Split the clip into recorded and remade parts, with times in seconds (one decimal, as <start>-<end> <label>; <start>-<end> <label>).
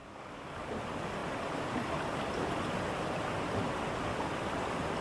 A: 0.0-0.7 remade; 0.7-5.0 recorded